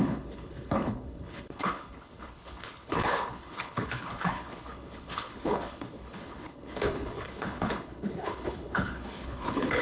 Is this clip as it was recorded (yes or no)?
no